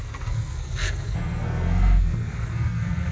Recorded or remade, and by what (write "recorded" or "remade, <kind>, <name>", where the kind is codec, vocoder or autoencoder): remade, codec, SNAC